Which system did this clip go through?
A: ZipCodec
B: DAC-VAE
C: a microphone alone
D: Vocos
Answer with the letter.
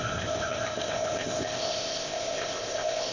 A